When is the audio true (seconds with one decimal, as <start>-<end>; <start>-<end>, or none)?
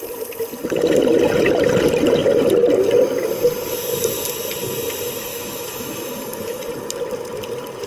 0.0-5.3; 6.6-7.9